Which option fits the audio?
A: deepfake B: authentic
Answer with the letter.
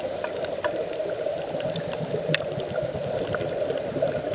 B